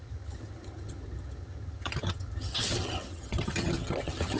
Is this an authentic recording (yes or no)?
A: no